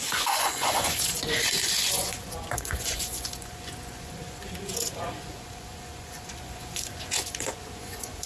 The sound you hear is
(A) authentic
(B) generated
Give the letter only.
B